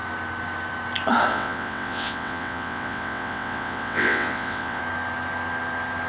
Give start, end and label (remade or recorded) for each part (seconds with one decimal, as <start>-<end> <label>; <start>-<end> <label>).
0.0-1.3 recorded; 1.3-4.8 remade; 4.8-6.1 recorded